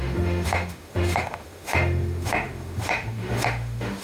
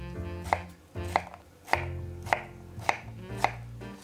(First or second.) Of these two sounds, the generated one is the first